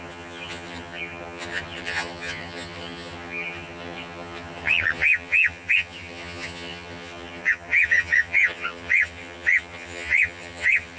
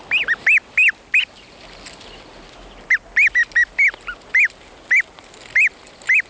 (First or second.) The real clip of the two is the second